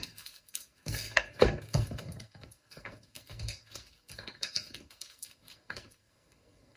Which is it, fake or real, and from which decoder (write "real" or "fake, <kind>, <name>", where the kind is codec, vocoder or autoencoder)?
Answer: fake, codec, SNAC